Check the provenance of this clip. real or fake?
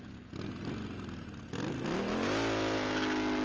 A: real